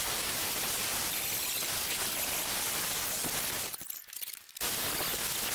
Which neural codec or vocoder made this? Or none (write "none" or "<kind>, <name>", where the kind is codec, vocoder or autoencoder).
none